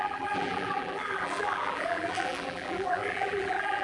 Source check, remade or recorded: remade